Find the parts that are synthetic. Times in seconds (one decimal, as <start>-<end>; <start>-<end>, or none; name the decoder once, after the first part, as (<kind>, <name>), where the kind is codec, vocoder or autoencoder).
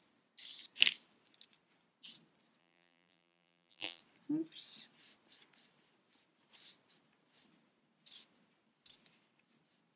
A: 2.6-4.0 (vocoder, BigVGAN v2)